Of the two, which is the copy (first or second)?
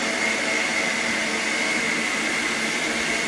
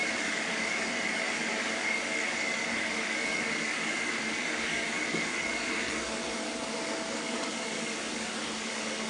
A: second